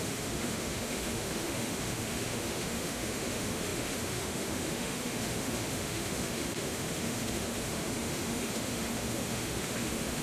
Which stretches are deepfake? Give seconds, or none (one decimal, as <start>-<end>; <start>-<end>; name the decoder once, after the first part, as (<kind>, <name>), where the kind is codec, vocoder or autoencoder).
0.0-10.2 (autoencoder, DAC-VAE)